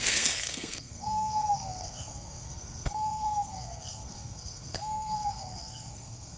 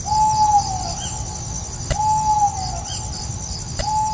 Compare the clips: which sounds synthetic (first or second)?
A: first